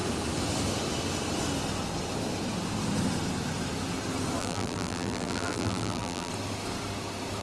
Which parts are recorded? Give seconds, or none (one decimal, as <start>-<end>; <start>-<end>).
0.0-4.4; 6.3-7.4